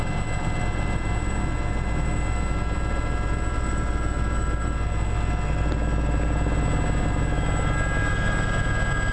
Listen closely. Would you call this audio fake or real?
real